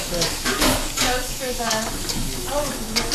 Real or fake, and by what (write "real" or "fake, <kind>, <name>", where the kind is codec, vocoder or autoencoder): fake, codec, DAC